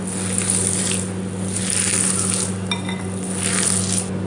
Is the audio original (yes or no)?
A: yes